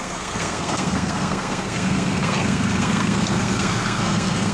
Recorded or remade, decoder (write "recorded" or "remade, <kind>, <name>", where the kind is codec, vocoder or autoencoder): remade, codec, SNAC